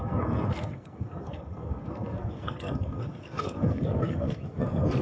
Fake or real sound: fake